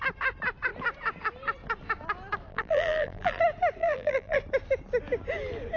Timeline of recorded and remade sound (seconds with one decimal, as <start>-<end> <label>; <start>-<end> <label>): 0.0-2.5 recorded; 2.5-3.4 remade; 3.4-3.8 recorded; 3.8-4.4 remade; 4.4-5.8 recorded